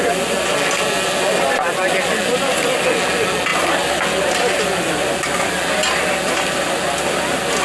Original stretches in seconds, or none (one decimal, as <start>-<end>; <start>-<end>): 0.0-7.6